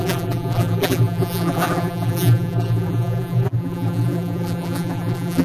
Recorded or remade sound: remade